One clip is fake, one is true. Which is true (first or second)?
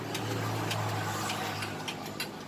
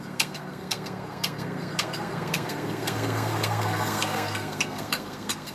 first